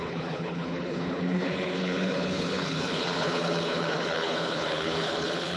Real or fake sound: fake